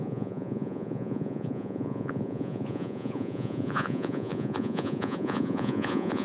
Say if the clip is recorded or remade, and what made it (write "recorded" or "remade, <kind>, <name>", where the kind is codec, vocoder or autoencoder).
remade, vocoder, Vocos